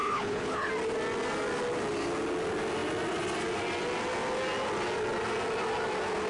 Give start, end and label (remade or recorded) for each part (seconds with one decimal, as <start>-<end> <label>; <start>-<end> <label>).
0.0-0.7 remade; 0.7-6.3 recorded